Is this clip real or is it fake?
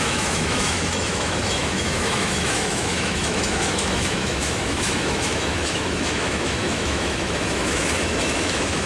fake